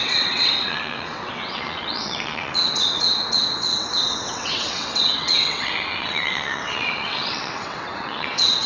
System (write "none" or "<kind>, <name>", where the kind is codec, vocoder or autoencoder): vocoder, WaveNeXt